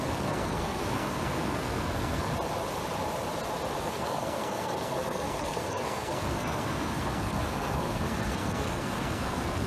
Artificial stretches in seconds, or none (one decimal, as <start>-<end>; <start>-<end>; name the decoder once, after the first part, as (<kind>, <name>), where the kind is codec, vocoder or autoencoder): 0.0-2.3 (codec, SNAC); 3.8-9.7